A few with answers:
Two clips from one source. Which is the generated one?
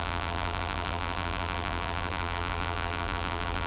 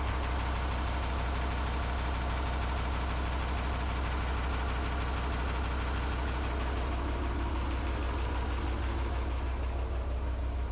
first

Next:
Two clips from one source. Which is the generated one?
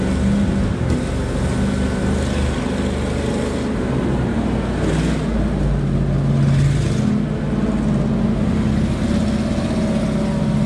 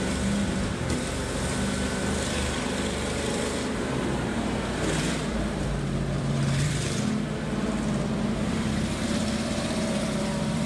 second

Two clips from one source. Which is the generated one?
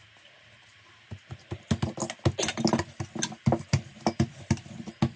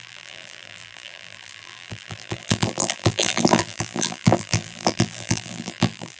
second